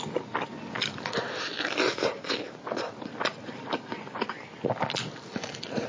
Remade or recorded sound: recorded